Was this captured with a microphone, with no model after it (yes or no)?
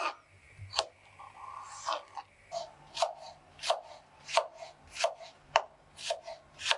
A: yes